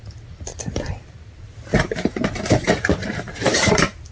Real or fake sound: fake